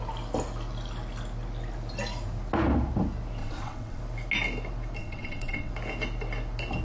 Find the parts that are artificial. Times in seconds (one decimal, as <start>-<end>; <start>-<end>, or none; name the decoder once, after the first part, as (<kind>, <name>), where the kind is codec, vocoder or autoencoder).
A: 3.4-4.0 (vocoder, WaveNeXt); 5.0-5.7